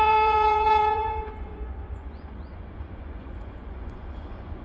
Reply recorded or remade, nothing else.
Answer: remade